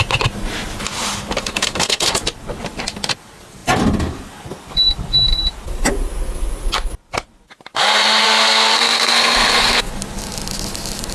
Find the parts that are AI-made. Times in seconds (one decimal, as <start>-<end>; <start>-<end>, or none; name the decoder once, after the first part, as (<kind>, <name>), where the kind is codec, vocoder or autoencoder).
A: 1.4-2.1 (codec, SNAC); 8.2-9.9